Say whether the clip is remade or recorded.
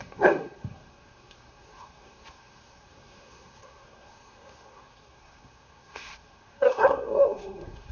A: remade